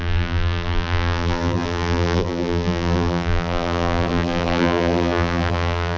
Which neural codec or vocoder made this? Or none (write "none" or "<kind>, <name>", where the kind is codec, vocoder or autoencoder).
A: vocoder, BigVGAN v2